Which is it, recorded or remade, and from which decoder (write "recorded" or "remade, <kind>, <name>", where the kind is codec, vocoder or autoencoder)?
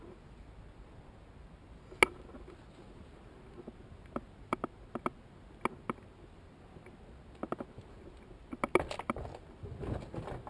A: recorded